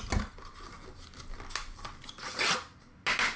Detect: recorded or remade recorded